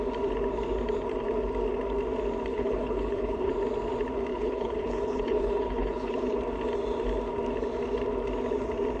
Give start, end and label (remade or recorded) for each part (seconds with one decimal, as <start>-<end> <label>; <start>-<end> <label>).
0.0-2.5 recorded; 2.5-3.5 remade; 3.5-4.3 recorded; 4.3-6.4 remade; 6.4-9.0 recorded

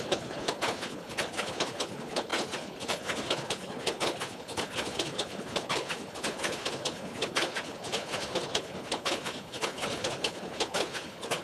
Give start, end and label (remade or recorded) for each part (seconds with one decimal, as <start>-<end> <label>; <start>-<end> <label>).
0.0-11.4 remade

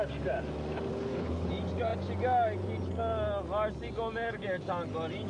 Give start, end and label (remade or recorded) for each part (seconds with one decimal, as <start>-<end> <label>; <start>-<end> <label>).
0.0-0.9 recorded; 0.9-1.5 remade; 1.5-5.3 recorded

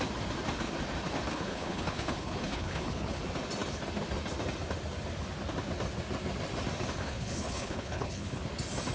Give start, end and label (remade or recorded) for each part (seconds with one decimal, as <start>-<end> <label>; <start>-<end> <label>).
0.0-1.3 recorded; 1.3-3.2 remade; 3.2-7.0 recorded; 7.0-8.4 remade; 8.4-8.9 recorded

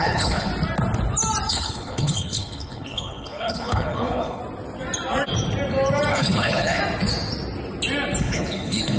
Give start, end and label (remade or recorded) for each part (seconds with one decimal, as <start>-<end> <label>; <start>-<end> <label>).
0.0-0.5 remade; 0.5-1.5 recorded; 1.5-4.4 remade; 4.4-6.1 recorded; 6.1-6.8 remade; 6.8-8.2 recorded; 8.2-9.0 remade